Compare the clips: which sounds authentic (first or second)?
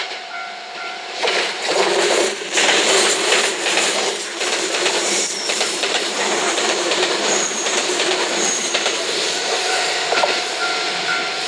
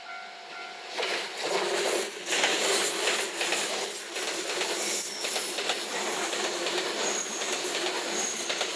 second